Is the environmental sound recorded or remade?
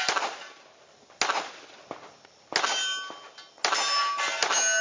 recorded